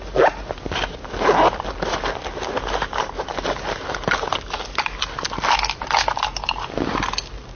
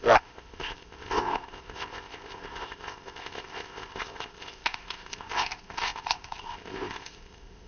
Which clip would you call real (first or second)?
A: first